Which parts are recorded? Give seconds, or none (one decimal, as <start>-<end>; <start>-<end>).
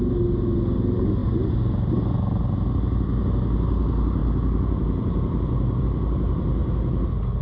0.0-7.4